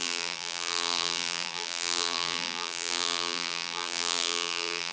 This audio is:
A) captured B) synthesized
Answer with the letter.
B